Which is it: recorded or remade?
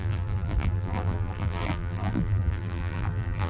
remade